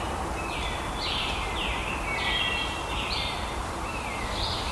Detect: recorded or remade recorded